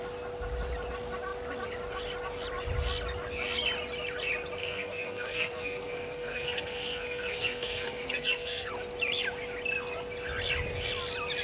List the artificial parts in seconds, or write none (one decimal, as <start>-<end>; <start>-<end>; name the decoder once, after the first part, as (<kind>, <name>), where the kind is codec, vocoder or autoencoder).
4.6-8.7 (codec, SNAC)